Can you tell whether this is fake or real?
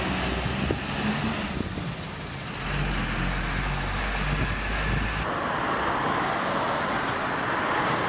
real